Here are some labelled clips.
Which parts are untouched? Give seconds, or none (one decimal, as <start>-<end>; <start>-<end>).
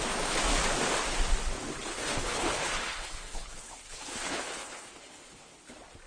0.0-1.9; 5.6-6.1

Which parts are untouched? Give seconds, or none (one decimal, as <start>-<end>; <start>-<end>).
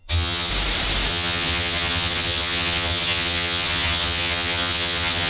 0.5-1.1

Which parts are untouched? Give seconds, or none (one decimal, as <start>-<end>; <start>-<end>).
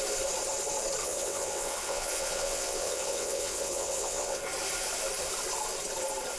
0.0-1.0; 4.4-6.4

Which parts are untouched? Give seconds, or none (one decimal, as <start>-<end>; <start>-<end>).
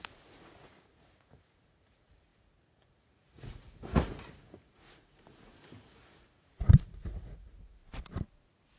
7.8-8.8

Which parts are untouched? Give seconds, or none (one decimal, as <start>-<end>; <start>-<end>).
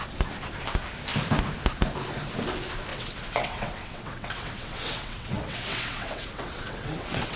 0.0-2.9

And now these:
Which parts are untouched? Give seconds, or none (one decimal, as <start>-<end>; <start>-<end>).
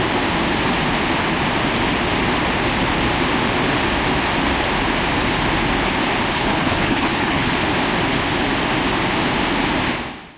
0.0-6.3; 7.5-10.4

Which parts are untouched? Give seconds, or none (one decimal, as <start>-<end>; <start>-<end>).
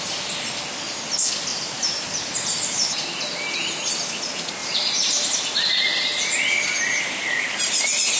0.0-1.5; 2.9-4.6; 5.7-8.2